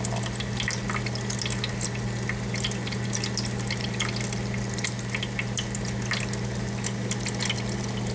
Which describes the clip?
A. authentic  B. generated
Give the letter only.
A